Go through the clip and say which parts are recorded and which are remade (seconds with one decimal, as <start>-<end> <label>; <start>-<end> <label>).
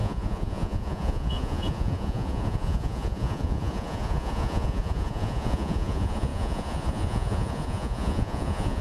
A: 0.0-8.8 remade